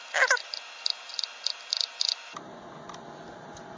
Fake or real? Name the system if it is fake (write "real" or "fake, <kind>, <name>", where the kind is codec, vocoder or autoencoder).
real